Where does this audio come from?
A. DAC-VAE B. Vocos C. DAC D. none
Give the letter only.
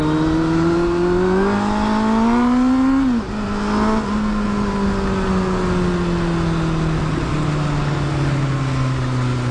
D